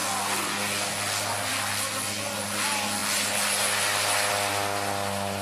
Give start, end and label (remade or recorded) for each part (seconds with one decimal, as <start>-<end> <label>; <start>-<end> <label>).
0.0-5.4 recorded